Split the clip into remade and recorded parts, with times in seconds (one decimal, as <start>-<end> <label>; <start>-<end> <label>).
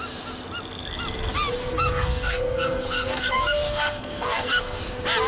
0.0-1.6 recorded; 1.6-4.8 remade; 4.8-5.3 recorded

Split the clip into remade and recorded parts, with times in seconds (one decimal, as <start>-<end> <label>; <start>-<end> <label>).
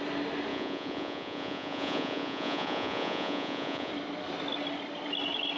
0.0-0.5 recorded; 0.5-3.9 remade; 3.9-5.6 recorded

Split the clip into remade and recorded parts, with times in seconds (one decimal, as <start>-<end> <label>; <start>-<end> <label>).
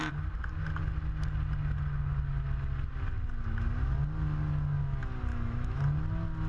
0.0-5.3 recorded; 5.3-5.8 remade; 5.8-6.5 recorded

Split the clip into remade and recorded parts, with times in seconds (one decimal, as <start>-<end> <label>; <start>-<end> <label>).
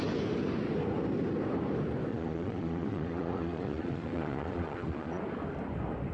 0.0-2.1 recorded; 2.1-5.2 remade; 5.2-6.1 recorded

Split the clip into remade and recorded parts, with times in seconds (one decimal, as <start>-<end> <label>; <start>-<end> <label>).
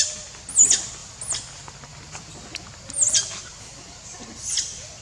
0.0-3.5 recorded; 3.5-4.1 remade; 4.1-5.0 recorded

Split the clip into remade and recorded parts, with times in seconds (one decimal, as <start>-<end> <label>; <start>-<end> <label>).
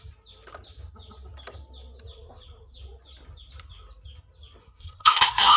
0.0-4.6 recorded; 4.6-5.6 remade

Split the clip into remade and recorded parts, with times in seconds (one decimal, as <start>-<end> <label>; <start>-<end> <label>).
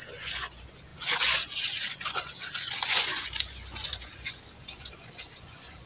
0.0-5.9 remade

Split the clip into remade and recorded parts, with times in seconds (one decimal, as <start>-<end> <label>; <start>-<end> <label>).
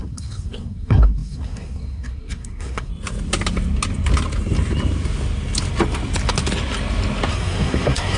0.0-2.9 remade; 2.9-7.3 recorded; 7.3-8.2 remade